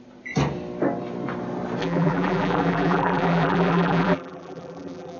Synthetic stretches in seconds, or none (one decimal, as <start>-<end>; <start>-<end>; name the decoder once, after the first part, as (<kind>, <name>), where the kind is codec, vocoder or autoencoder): 1.8-5.2 (vocoder, BigVGAN v2)